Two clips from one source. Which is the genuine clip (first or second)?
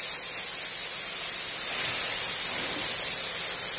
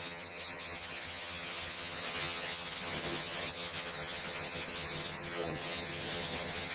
first